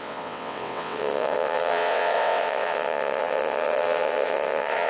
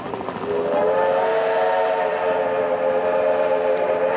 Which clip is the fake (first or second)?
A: first